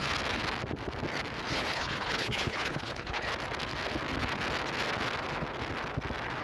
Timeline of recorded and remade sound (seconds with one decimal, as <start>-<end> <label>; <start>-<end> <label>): 0.0-1.5 recorded; 1.5-3.3 remade; 3.3-6.4 recorded